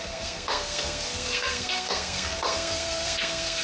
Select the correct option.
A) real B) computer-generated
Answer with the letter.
B